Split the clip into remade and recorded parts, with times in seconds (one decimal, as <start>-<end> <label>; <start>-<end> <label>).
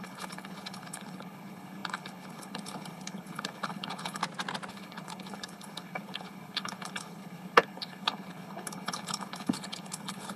0.0-4.2 remade; 4.2-4.7 recorded; 4.7-10.4 remade